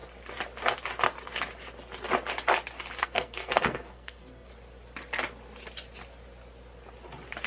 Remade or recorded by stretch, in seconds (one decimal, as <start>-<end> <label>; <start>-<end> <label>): 0.0-3.0 recorded; 3.0-4.5 remade; 4.5-7.5 recorded